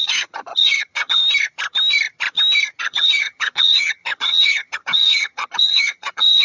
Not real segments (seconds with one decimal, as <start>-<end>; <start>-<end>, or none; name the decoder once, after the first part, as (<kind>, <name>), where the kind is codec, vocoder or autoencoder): 0.0-1.2 (vocoder, HiFi-GAN); 2.8-6.4